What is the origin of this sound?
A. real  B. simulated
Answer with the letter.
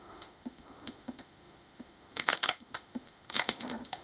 B